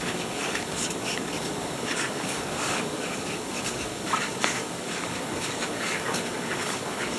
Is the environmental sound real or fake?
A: fake